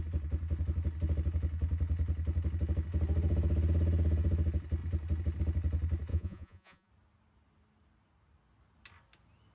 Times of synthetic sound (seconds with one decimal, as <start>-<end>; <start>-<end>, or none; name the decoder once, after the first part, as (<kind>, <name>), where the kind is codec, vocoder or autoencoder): 6.1-6.9 (vocoder, Vocos)